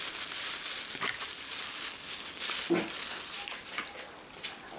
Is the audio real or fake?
real